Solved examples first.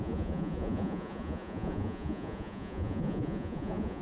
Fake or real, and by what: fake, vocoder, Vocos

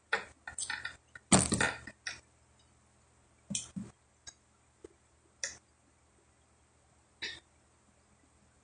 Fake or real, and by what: real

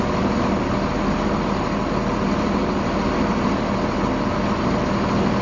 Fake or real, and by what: real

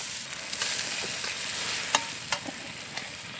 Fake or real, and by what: real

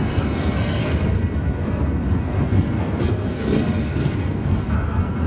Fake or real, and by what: fake, codec, SNAC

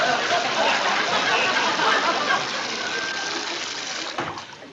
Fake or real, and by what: real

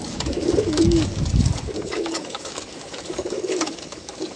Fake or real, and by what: fake, codec, DAC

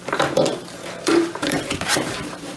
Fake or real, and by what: fake, vocoder, BigVGAN v2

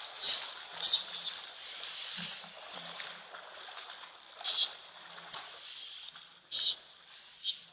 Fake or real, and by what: real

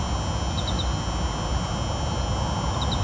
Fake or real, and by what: real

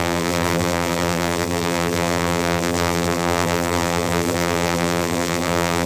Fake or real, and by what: fake, vocoder, BigVGAN v2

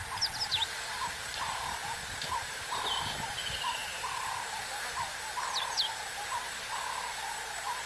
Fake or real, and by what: real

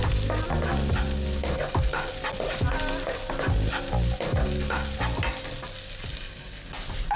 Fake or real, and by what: real